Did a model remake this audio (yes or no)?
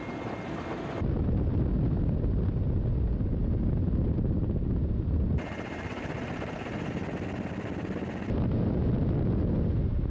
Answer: no